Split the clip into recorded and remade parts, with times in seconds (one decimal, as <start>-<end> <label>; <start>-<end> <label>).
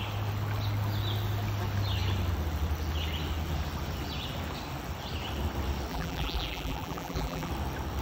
0.0-5.9 recorded; 5.9-7.5 remade; 7.5-8.0 recorded